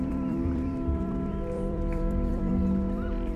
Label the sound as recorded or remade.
remade